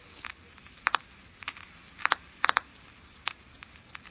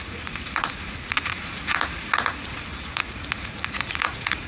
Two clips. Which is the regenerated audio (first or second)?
second